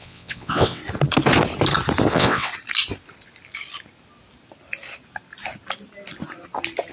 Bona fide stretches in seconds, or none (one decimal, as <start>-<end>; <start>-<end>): 0.8-2.1; 2.5-6.9